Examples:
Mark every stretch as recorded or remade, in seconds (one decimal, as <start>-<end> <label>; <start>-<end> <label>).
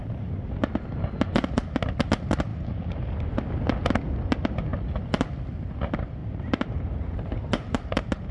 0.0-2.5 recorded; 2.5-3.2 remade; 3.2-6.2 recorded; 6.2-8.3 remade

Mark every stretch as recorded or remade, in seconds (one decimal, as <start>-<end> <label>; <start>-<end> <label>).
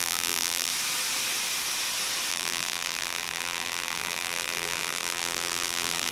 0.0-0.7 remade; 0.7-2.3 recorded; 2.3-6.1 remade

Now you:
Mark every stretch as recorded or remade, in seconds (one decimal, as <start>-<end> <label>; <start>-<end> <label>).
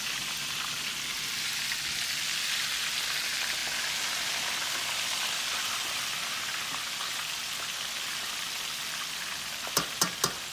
0.0-10.5 recorded